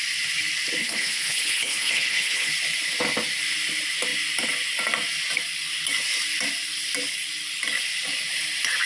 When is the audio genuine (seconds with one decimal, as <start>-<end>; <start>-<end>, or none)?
0.0-0.8; 2.5-8.9